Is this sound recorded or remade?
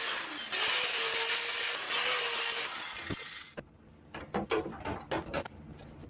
recorded